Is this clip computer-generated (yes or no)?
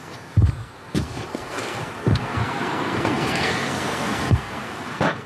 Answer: yes